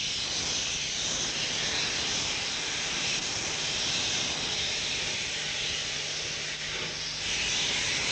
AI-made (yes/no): no